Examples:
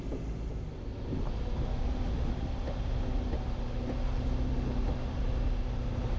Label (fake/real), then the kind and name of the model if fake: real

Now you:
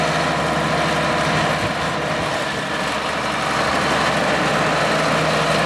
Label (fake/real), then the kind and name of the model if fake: real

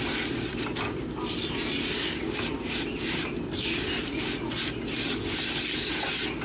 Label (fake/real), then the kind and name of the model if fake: real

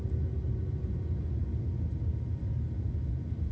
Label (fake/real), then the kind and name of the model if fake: real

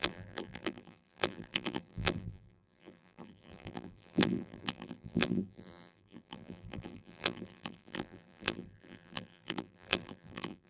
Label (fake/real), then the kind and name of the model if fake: fake, vocoder, BigVGAN v2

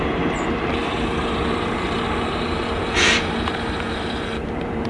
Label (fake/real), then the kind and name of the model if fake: fake, vocoder, BigVGAN v2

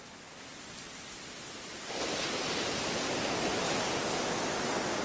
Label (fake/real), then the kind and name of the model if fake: real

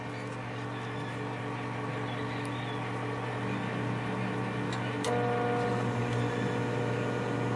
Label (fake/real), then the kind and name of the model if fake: real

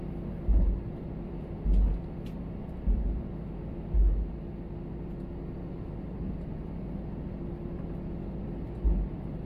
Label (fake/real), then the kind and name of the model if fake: real